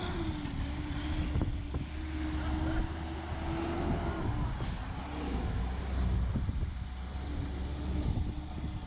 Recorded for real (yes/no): yes